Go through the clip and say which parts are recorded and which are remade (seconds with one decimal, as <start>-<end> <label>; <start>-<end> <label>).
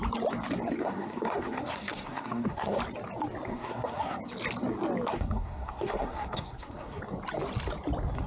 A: 0.0-0.8 recorded; 0.8-2.8 remade; 2.8-3.5 recorded; 3.5-4.2 remade; 4.2-5.1 recorded; 5.1-7.0 remade; 7.0-8.3 recorded